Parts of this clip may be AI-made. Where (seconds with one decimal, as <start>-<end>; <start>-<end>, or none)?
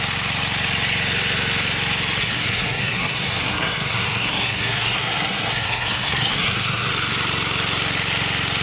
2.2-6.9